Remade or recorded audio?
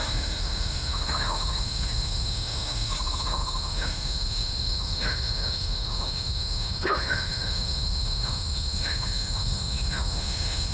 remade